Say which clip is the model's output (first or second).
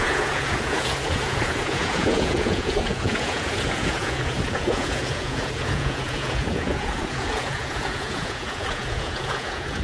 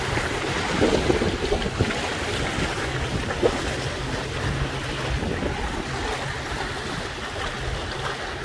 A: first